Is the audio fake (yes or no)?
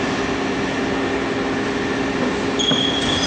no